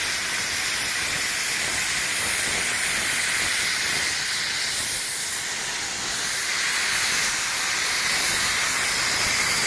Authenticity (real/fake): real